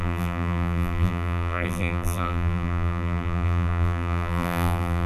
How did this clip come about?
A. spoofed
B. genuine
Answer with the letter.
A